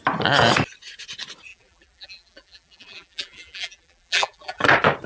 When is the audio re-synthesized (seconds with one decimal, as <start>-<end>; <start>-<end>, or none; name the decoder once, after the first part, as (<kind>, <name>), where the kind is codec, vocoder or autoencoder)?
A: 1.5-4.6 (vocoder, BigVGAN v2)